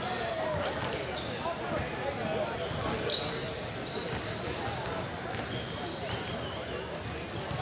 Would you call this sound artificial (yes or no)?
no